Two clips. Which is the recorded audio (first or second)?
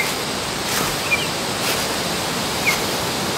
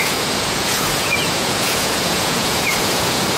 first